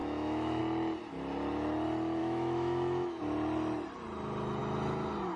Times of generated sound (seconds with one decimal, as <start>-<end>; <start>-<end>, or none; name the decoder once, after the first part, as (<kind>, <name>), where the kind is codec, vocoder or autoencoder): 0.0-0.6 (autoencoder, DAC-VAE); 2.2-3.2